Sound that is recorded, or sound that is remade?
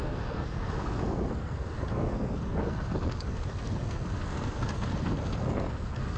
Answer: remade